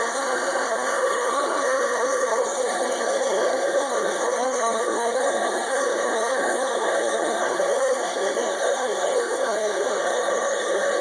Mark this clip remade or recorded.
remade